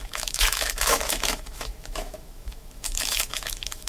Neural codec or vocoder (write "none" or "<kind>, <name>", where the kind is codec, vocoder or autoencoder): autoencoder, DAC-VAE